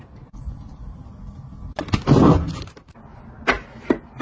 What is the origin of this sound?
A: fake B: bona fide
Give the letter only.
B